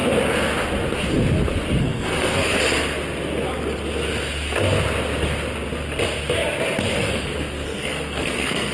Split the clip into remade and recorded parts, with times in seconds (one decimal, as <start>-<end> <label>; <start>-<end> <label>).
0.0-1.8 recorded; 1.8-2.5 remade; 2.5-7.0 recorded; 7.0-8.7 remade